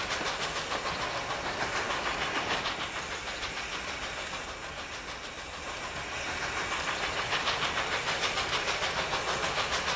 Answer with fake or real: real